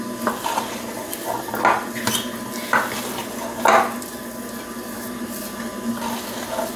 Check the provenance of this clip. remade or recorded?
recorded